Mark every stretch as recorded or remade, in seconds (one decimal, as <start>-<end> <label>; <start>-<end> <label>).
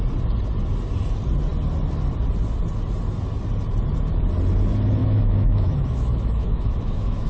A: 0.0-5.0 recorded; 5.0-7.3 remade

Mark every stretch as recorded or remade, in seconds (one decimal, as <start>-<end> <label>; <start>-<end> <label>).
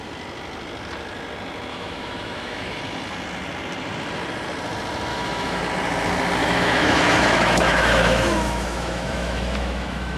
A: 0.0-1.7 recorded; 1.7-2.8 remade; 2.8-5.1 recorded; 5.1-5.6 remade; 5.6-6.4 recorded; 6.4-10.2 remade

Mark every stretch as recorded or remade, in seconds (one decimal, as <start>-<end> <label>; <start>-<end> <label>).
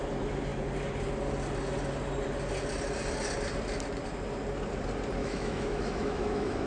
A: 0.0-5.2 recorded; 5.2-6.7 remade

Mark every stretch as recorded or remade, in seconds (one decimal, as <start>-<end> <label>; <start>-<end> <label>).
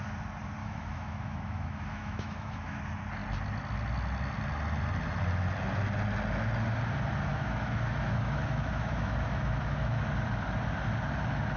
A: 0.0-0.6 recorded; 0.6-2.8 remade; 2.8-7.3 recorded; 7.3-10.0 remade; 10.0-11.6 recorded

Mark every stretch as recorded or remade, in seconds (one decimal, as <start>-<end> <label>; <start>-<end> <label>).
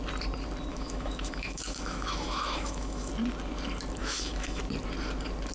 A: 0.0-0.7 recorded; 0.7-3.1 remade; 3.1-4.0 recorded; 4.0-4.6 remade; 4.6-5.5 recorded